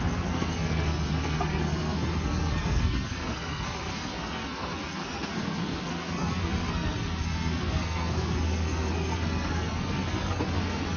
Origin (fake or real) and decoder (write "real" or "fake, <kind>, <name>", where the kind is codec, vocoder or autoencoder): fake, codec, SNAC